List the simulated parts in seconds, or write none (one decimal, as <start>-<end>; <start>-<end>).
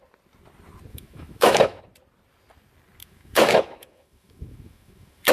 0.9-1.8; 3.0-5.3